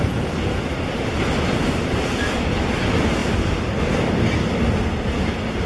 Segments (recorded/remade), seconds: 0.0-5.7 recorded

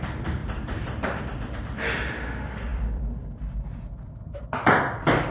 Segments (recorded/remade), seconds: 0.0-0.4 recorded; 0.4-1.2 remade; 1.2-2.7 recorded; 2.7-4.4 remade; 4.4-5.3 recorded

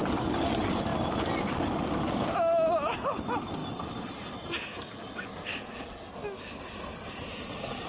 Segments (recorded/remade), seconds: 0.0-7.9 recorded

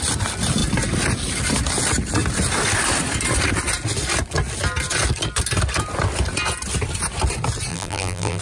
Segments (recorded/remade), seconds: 0.0-7.7 recorded; 7.7-8.4 remade

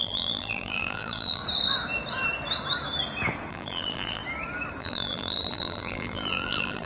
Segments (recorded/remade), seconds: 0.0-1.4 remade; 1.4-3.5 recorded; 3.5-4.2 remade; 4.2-4.8 recorded; 4.8-6.9 remade

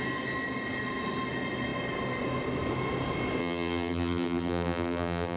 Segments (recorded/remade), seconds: 0.0-3.4 recorded; 3.4-5.4 remade

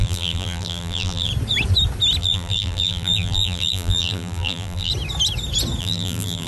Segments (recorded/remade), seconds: 0.0-1.3 remade; 1.3-2.2 recorded; 2.2-4.9 remade; 4.9-5.8 recorded; 5.8-6.5 remade

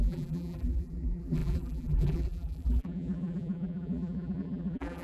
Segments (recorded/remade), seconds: 0.0-5.0 remade